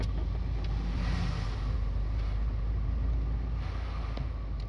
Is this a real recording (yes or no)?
yes